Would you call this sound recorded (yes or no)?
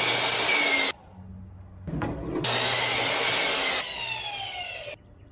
yes